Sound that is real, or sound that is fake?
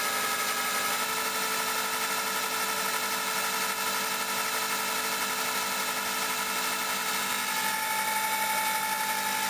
real